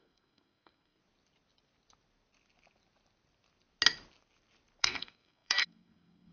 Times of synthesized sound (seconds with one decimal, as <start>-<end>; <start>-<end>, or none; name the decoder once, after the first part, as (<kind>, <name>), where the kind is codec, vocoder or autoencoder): 0.0-1.0 (codec, SNAC); 4.8-6.3